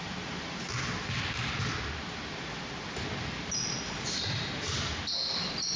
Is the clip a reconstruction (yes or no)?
no